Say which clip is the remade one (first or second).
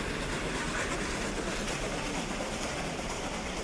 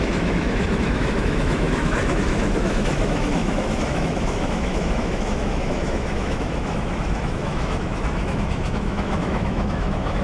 second